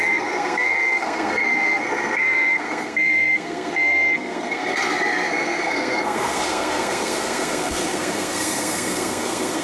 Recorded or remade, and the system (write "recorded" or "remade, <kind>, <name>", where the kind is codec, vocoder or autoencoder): remade, codec, SNAC